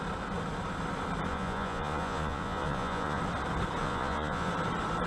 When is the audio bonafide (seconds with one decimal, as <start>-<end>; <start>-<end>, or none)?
0.0-1.3; 3.2-3.8; 4.5-5.1

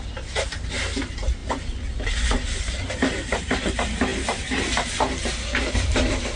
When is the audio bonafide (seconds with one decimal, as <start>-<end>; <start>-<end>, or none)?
0.0-6.4

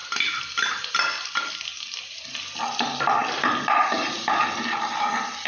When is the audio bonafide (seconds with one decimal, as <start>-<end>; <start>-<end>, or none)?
0.0-5.5

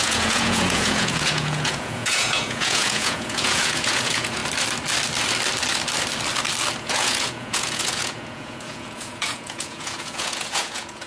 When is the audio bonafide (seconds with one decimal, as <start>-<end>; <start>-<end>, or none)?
4.4-6.8

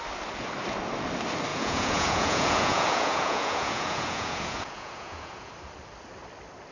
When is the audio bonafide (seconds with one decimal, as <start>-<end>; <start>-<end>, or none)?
0.0-1.5; 5.5-6.7

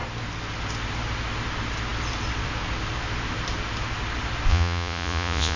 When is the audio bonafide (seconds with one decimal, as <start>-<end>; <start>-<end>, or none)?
0.0-4.5

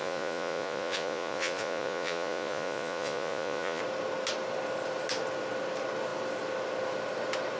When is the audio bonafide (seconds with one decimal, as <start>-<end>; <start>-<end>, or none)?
3.8-7.6